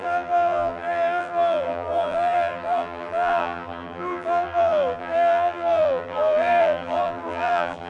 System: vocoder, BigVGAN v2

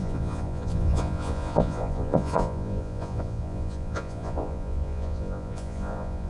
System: vocoder, Vocos